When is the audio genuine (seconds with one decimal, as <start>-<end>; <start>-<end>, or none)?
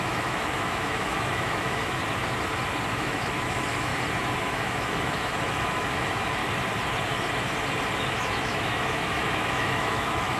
2.0-2.9; 3.9-4.4; 6.4-8.0